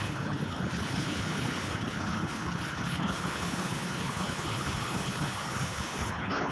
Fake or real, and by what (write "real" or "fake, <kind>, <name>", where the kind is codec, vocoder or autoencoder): fake, codec, HILCodec